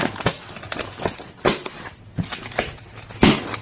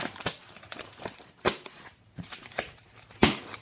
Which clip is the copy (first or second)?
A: second